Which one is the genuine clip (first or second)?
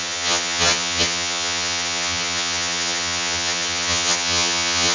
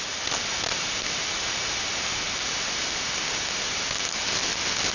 second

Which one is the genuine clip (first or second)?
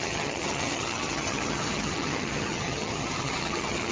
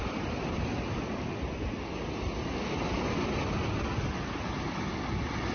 second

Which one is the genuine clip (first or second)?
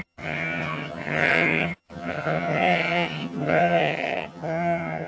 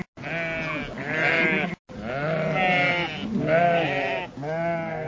second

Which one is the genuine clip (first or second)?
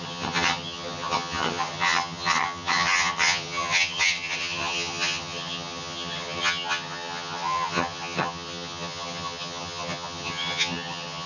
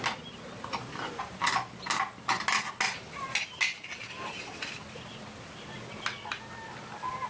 second